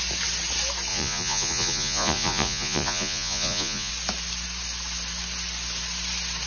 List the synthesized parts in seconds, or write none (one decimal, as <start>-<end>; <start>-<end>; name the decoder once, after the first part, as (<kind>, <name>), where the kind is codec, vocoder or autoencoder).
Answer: 0.9-3.9 (vocoder, Vocos)